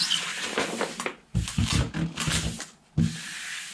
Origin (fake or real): real